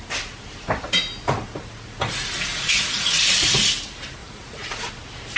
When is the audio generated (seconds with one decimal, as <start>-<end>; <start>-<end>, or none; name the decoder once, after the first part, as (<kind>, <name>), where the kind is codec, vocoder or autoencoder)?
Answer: 2.5-3.2 (vocoder, Vocos); 4.2-4.9